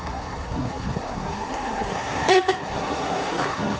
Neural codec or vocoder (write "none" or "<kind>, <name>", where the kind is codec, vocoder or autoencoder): codec, SNAC